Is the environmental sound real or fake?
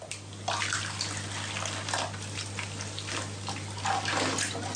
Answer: real